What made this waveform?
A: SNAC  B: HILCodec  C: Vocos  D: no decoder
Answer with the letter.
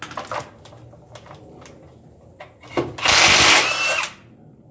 D